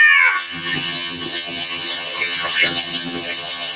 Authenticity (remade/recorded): remade